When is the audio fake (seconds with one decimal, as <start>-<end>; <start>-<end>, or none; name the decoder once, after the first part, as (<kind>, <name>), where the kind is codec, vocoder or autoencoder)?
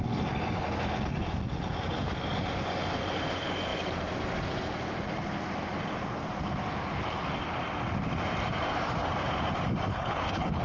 9.9-10.6 (codec, HILCodec)